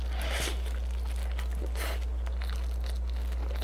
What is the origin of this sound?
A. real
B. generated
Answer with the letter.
A